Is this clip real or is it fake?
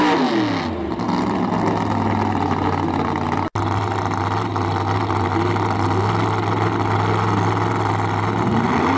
real